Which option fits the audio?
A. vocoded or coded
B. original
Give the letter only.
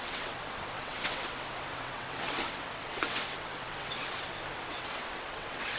A